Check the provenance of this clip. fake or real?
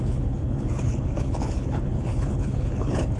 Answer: fake